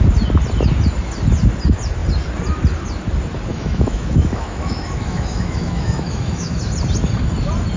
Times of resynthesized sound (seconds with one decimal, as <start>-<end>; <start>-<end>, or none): 3.5-6.6